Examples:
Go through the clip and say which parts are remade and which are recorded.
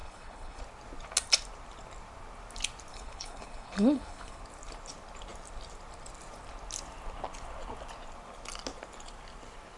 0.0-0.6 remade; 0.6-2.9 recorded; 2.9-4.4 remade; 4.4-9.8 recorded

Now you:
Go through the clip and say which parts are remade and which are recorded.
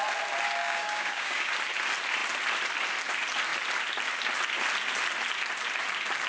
0.0-0.6 recorded; 0.6-1.5 remade; 1.5-6.3 recorded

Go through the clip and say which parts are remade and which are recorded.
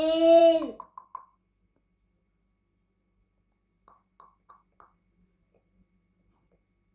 0.0-6.9 recorded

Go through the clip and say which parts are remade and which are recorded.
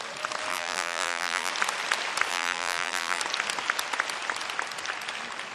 0.0-0.5 recorded; 0.5-1.5 remade; 1.5-2.3 recorded; 2.3-3.2 remade; 3.2-5.5 recorded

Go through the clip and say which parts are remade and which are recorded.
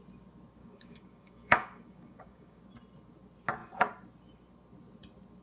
0.0-0.6 recorded; 0.6-2.6 remade; 2.6-5.4 recorded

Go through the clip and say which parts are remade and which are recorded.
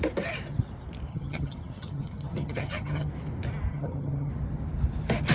0.0-1.1 recorded; 1.1-3.1 remade; 3.1-3.7 recorded; 3.7-4.3 remade; 4.3-5.3 recorded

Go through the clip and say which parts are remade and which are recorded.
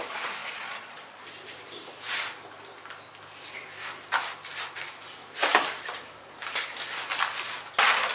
0.0-0.4 recorded; 0.4-1.2 remade; 1.2-8.1 recorded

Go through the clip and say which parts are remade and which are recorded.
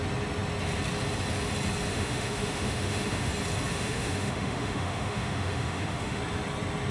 0.0-1.9 recorded; 1.9-3.3 remade; 3.3-3.7 recorded; 3.7-6.2 remade; 6.2-6.9 recorded